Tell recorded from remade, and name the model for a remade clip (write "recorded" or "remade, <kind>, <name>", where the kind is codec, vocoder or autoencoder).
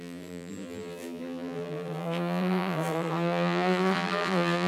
remade, vocoder, BigVGAN v2